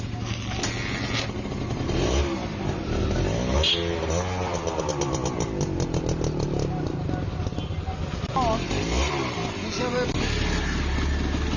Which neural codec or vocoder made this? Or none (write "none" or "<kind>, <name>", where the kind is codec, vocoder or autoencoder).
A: none